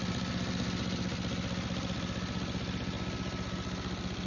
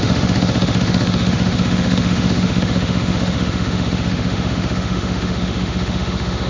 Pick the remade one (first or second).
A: second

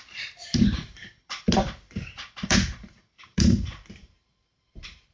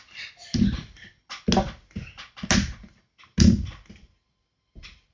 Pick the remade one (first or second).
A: first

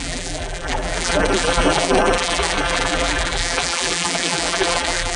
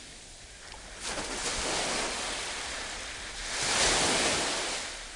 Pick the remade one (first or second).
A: first